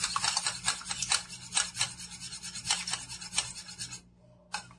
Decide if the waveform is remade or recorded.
recorded